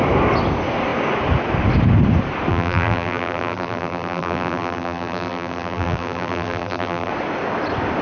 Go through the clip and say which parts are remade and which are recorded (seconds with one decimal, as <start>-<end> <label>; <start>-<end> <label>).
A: 0.0-2.5 recorded; 2.5-7.1 remade; 7.1-8.0 recorded